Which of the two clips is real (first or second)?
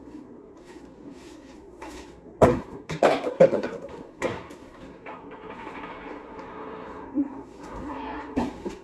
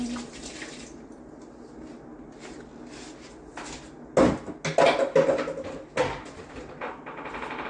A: second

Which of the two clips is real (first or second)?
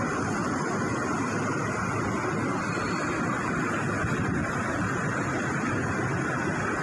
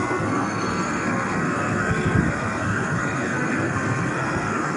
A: first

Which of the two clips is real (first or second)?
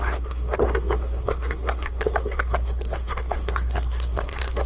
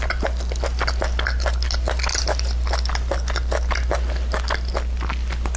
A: second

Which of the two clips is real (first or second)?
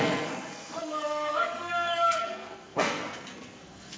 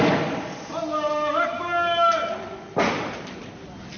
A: second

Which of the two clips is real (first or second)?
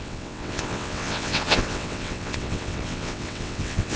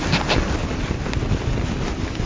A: second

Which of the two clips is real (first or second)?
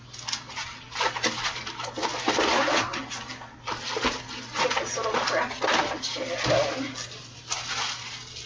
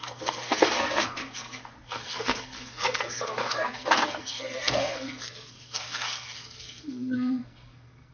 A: first